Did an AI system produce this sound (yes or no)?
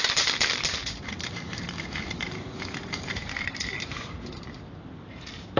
yes